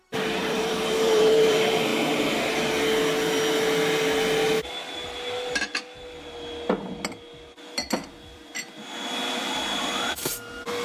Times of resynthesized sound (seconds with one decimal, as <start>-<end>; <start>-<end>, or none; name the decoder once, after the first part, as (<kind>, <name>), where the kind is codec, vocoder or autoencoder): 0.0-1.9 (vocoder, BigVGAN v2); 7.1-8.5; 9.4-10.8

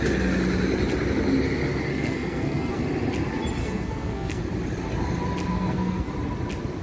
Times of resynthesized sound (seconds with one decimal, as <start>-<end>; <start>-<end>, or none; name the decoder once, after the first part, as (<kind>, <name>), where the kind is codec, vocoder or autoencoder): 1.9-2.8 (codec, SNAC); 3.6-4.4; 5.5-6.1

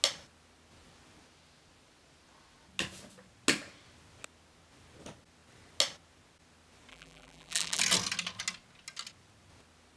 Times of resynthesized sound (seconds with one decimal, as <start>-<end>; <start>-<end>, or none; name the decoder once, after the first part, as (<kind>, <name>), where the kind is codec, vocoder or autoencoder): 6.9-7.8 (vocoder, BigVGAN v2)